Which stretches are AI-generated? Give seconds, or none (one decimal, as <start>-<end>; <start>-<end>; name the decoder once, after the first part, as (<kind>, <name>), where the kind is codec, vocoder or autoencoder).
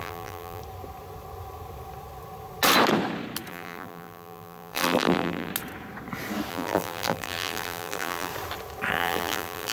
0.0-0.6 (vocoder, BigVGAN v2); 3.5-5.5; 6.5-8.3; 8.9-9.7